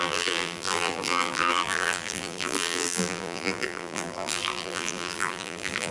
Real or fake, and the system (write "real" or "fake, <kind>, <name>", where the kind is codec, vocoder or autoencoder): fake, vocoder, BigVGAN v2